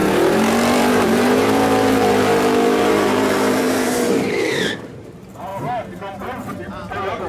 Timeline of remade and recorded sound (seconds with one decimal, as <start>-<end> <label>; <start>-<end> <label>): 0.0-5.5 remade; 5.5-6.6 recorded; 6.6-7.3 remade